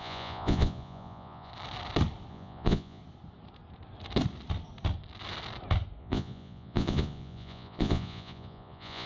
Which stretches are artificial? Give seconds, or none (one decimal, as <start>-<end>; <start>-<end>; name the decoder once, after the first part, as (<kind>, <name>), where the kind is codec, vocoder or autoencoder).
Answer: 0.0-1.5 (vocoder, Vocos); 2.3-3.0; 6.0-9.1